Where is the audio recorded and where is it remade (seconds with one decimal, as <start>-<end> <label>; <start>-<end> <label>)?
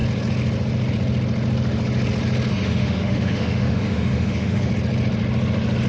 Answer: 0.0-2.5 recorded; 2.5-4.7 remade; 4.7-5.9 recorded